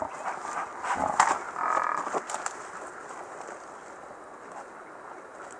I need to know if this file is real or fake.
real